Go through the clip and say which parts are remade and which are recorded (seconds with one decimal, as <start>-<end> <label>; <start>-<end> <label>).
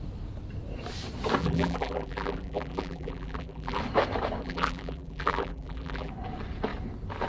0.0-1.4 recorded; 1.4-3.8 remade; 3.8-4.4 recorded; 4.4-6.1 remade; 6.1-7.3 recorded